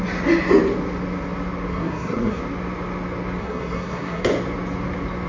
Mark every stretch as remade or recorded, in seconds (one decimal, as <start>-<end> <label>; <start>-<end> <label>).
0.0-1.7 recorded; 1.7-2.4 remade; 2.4-3.4 recorded; 3.4-4.2 remade; 4.2-5.3 recorded